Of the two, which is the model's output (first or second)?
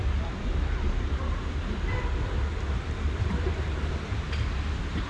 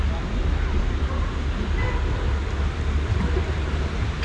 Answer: first